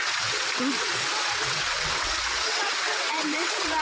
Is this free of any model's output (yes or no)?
no